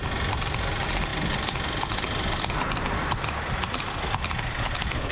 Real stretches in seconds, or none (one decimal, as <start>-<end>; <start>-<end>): 0.0-5.1